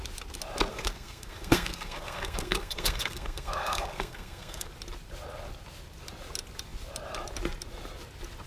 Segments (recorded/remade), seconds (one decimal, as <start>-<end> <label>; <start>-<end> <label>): 0.0-0.7 recorded; 0.7-4.7 remade; 4.7-8.5 recorded